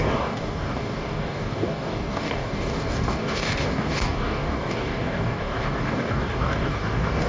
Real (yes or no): no